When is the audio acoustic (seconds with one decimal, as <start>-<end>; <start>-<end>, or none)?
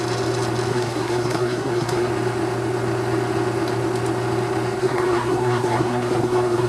0.0-0.7; 2.1-4.8